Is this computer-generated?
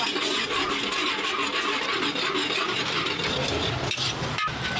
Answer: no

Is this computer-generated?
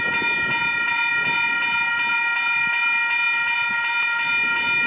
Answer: no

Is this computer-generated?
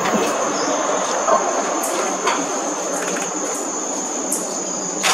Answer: no